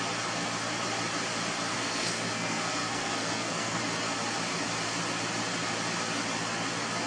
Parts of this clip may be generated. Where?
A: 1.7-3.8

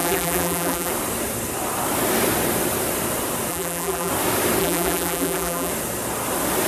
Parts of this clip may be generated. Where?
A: 0.0-0.9; 3.5-4.1; 4.6-5.7